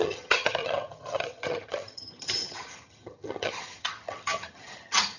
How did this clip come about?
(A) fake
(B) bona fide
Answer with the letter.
A